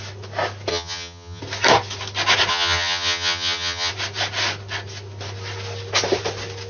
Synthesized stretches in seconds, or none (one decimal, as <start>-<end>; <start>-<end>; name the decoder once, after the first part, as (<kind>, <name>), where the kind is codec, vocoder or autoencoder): 0.7-1.4 (vocoder, HiFi-GAN); 2.5-3.9